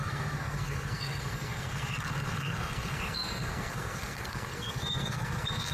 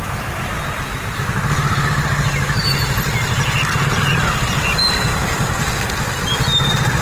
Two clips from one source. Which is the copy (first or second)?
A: first